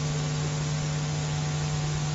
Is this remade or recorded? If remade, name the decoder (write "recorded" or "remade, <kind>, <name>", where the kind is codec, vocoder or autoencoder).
recorded